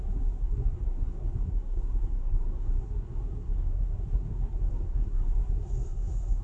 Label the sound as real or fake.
fake